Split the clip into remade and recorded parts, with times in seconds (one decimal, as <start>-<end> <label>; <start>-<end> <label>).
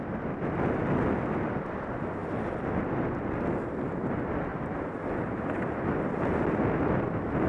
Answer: 0.0-7.5 recorded